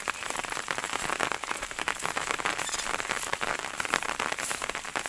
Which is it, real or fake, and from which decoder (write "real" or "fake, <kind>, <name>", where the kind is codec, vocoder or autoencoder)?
fake, vocoder, BigVGAN v2